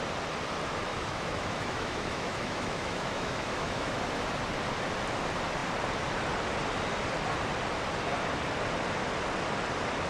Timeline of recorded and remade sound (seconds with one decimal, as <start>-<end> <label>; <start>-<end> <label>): 0.0-0.9 recorded; 0.9-4.0 remade; 4.0-10.1 recorded